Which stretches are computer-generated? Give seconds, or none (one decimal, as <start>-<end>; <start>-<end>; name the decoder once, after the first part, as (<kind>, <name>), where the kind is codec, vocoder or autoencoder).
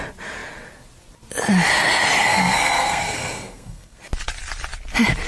2.3-4.0 (codec, SNAC)